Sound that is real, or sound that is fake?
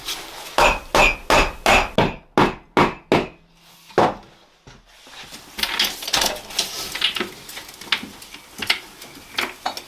real